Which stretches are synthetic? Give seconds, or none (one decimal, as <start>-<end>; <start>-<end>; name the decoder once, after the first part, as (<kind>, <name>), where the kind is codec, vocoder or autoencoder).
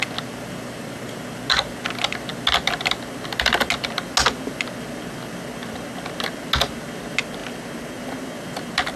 none